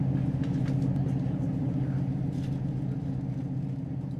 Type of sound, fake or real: real